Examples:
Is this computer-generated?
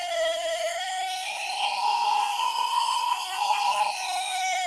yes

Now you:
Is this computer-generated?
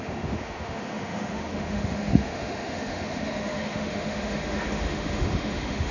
yes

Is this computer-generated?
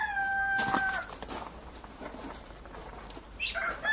yes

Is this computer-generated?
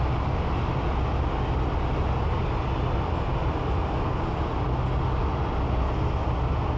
no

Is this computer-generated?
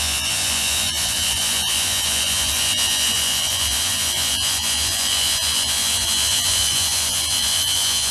yes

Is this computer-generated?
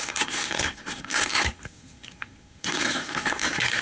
yes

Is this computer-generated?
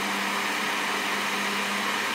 no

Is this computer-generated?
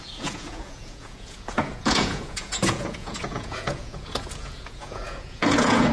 yes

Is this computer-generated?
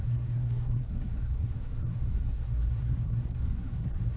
yes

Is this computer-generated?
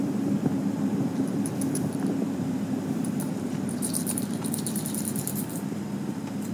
yes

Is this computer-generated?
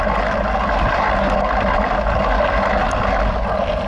no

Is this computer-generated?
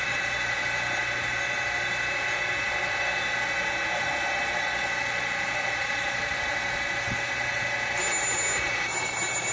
no